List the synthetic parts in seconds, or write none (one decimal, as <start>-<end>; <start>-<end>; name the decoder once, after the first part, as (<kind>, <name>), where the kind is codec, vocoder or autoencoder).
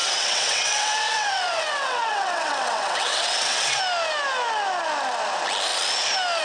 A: 0.0-3.8 (vocoder, WaveNeXt)